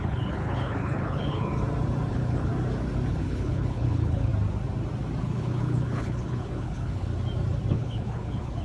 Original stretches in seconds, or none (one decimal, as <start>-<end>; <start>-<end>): 1.5-2.1; 2.5-3.1; 4.3-5.2; 7.1-7.7